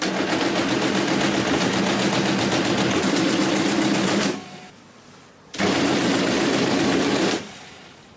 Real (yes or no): no